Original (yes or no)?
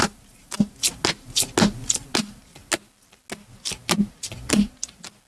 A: yes